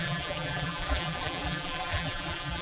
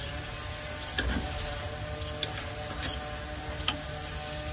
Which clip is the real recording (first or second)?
second